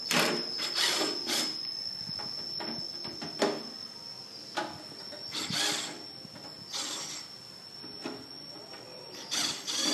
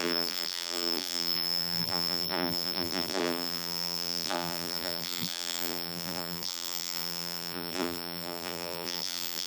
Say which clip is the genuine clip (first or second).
first